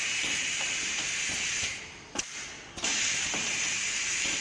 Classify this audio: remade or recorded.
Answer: remade